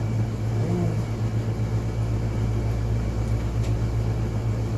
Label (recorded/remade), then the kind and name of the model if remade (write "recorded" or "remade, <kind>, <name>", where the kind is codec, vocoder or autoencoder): recorded